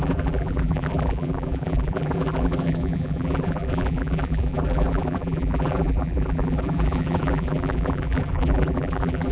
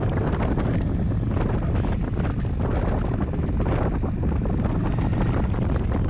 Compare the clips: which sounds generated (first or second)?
first